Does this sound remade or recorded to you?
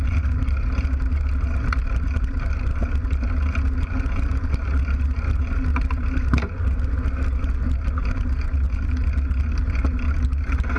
recorded